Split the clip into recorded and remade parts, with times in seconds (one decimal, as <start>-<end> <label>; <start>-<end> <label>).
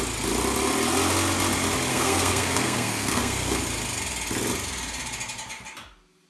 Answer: 0.0-1.9 recorded; 1.9-3.6 remade; 3.6-6.3 recorded